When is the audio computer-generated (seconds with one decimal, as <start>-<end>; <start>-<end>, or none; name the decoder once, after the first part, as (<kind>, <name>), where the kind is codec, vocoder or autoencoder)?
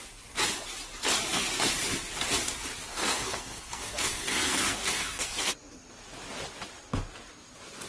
2.9-5.5 (codec, SNAC)